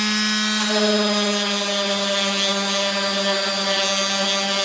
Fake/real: real